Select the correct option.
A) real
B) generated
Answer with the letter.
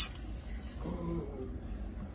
A